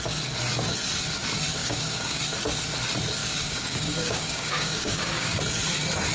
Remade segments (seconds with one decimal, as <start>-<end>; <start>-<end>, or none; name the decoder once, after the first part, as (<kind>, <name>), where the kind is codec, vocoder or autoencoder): 1.6-2.2 (codec, DAC); 3.2-5.4